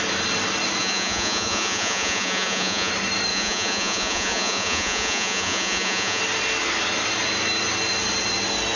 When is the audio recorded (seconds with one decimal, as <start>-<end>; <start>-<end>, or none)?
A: 0.0-0.8; 2.9-3.3; 6.2-8.8